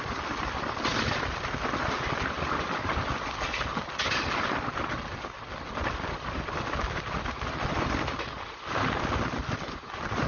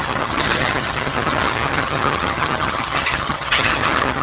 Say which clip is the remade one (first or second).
second